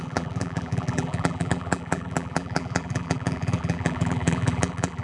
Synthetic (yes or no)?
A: yes